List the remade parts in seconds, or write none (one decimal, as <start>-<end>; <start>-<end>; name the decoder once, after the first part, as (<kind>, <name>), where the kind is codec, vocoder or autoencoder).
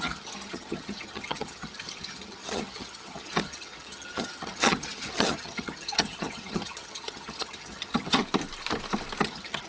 0.0-8.2 (vocoder, HiFi-GAN); 9.2-9.7